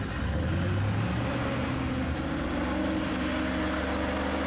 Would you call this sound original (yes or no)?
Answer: yes